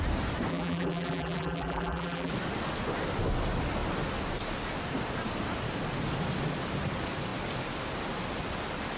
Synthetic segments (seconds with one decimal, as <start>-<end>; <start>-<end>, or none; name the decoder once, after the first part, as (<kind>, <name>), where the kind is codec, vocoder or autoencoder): 0.5-2.3 (vocoder, BigVGAN v2)